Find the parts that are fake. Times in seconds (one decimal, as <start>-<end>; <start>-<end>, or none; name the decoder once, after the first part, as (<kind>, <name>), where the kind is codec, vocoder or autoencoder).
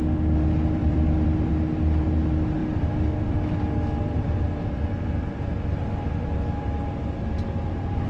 0.8-1.5 (vocoder, BigVGAN v2); 2.6-7.3